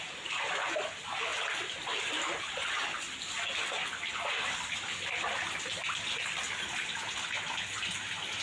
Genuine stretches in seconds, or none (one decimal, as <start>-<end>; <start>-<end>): 0.0-8.4

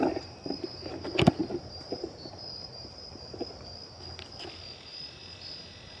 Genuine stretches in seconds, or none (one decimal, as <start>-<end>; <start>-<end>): 0.0-1.4; 2.5-4.9; 5.4-6.0